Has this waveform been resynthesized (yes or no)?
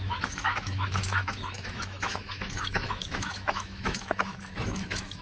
yes